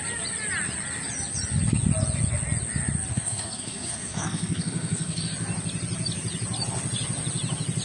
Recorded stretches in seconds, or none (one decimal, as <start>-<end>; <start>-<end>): 0.0-3.1; 5.2-7.8